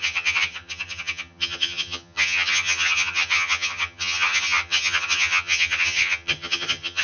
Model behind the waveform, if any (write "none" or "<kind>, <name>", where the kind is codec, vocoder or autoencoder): vocoder, HiFi-GAN